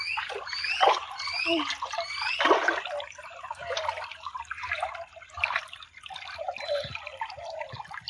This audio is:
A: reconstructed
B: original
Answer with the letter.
B